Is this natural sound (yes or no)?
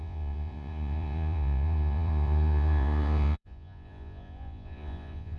no